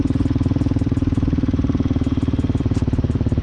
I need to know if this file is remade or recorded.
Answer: remade